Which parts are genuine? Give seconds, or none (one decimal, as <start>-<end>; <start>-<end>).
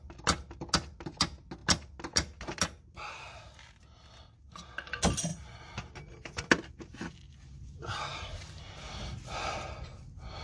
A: 0.0-10.4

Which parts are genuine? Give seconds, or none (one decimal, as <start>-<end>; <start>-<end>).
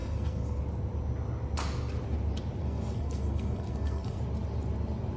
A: 0.6-2.6; 4.2-5.2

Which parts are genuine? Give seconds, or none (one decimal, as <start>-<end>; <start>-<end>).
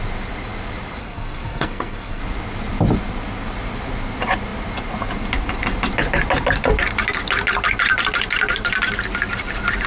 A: 0.0-1.0; 2.2-9.9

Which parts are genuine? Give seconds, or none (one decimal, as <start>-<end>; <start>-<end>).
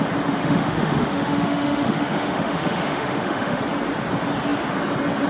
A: 0.0-0.4; 3.6-5.3